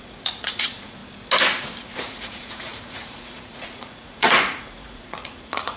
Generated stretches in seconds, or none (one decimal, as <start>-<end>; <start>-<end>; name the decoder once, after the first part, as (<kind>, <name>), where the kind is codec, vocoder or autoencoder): 0.0-1.0 (vocoder, Vocos); 1.8-5.8